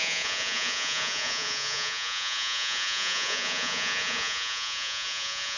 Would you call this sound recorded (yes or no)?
no